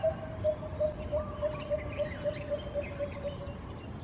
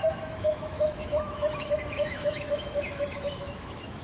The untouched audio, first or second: first